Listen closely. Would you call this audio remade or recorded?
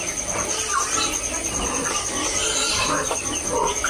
recorded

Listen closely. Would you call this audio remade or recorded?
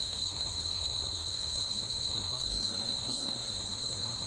remade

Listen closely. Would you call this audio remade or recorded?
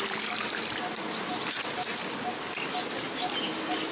recorded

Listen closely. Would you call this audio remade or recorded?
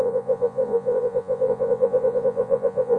remade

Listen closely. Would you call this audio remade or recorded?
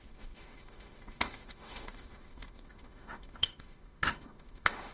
remade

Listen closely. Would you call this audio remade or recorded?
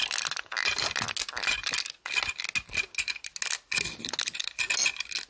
recorded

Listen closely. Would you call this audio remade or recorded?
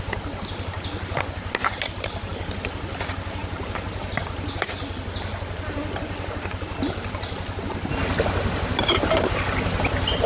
recorded